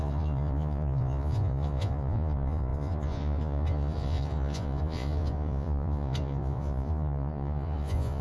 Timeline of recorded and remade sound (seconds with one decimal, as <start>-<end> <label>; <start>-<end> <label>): 0.0-8.2 remade